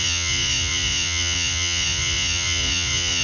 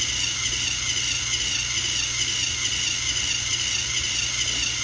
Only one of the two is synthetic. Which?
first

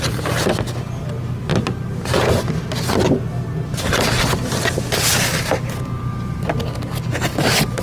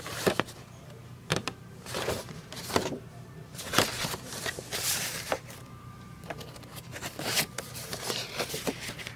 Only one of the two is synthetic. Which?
second